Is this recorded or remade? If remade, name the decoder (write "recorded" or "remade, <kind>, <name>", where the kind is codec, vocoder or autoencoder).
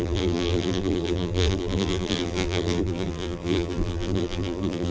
remade, vocoder, BigVGAN v2